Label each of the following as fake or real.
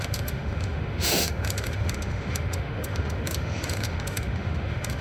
fake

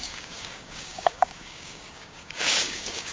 fake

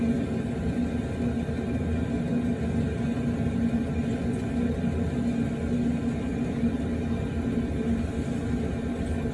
real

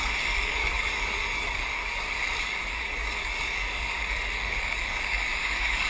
fake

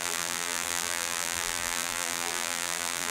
fake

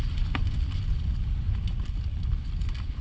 real